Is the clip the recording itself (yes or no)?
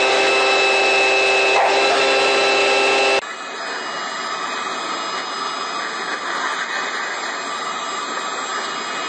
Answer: yes